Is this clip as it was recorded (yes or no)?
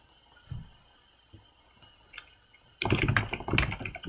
yes